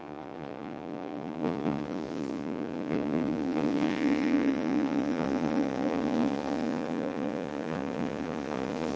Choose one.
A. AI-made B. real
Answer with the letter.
A